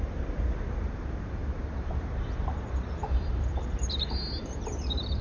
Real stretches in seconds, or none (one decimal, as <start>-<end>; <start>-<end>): none